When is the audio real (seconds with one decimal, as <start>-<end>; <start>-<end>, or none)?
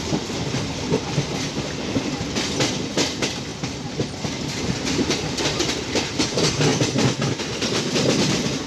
0.0-8.7